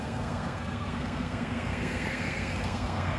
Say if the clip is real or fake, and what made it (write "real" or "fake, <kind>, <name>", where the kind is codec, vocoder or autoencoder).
fake, codec, SNAC